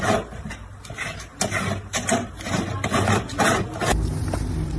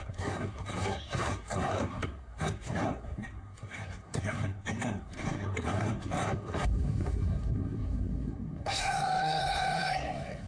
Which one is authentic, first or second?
first